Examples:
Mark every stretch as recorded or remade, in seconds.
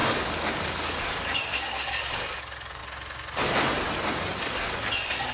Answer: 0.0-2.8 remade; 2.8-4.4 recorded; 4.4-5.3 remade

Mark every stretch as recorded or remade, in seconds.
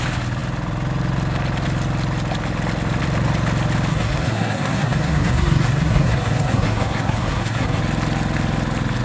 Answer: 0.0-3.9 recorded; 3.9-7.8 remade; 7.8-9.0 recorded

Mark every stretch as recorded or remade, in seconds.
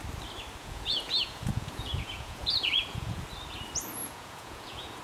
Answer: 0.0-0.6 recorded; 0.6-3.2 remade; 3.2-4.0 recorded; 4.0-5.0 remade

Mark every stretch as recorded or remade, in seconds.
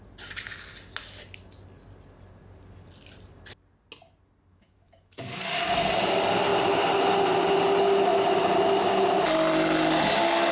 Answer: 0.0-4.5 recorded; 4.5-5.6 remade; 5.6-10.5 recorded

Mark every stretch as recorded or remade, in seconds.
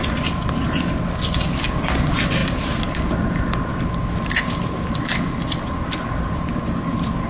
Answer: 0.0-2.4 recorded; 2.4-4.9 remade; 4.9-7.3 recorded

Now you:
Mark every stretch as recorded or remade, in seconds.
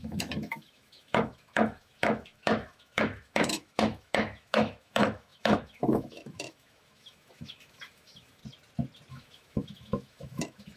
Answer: 0.0-8.4 remade; 8.4-9.1 recorded; 9.1-10.8 remade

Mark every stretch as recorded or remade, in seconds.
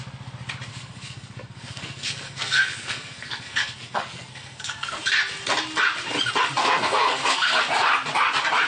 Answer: 0.0-0.7 recorded; 0.7-5.0 remade; 5.0-6.6 recorded; 6.6-7.6 remade; 7.6-8.7 recorded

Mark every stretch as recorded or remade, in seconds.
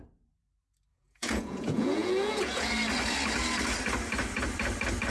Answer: 0.0-0.9 recorded; 0.9-2.7 remade; 2.7-5.1 recorded